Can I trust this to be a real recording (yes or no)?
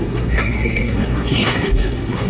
no